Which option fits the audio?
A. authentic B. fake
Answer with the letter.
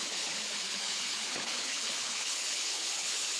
B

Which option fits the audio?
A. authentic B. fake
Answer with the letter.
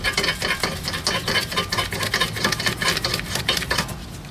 A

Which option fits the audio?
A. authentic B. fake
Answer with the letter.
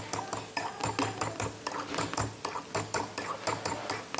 A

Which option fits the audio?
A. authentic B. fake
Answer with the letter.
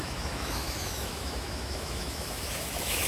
B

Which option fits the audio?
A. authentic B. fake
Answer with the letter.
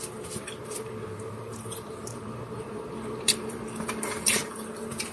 B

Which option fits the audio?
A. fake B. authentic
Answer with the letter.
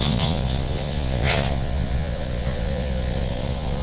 A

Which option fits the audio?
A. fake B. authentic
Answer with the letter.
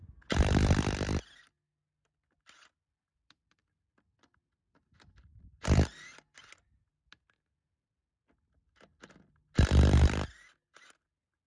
B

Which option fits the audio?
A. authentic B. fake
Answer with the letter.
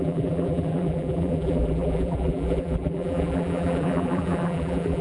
B